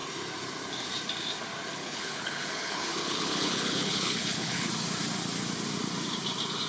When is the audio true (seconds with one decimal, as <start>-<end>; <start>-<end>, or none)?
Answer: 0.0-1.8; 4.7-6.7